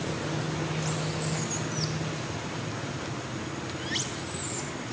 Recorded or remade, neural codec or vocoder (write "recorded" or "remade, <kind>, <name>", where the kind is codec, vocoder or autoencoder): recorded